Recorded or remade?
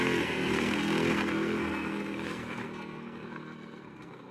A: remade